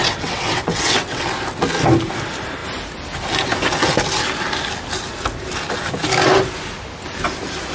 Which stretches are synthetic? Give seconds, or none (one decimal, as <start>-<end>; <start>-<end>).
0.0-1.2